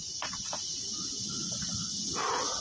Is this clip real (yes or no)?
yes